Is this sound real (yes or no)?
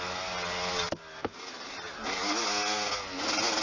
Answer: yes